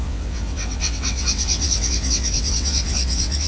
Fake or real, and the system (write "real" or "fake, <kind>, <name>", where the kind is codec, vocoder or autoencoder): fake, vocoder, WaveNeXt